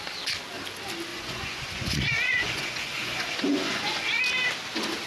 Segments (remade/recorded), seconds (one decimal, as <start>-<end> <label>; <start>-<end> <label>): 0.0-1.1 recorded; 1.1-4.2 remade; 4.2-5.1 recorded